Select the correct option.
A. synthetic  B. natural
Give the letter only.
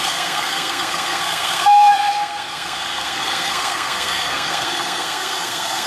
A